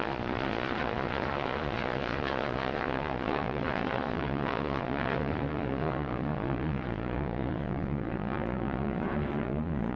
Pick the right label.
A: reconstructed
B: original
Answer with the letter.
A